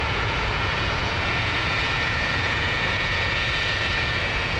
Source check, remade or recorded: remade